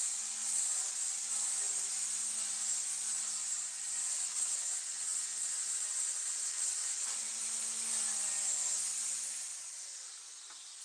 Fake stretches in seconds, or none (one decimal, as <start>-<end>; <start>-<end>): 0.0-1.3; 4.0-7.4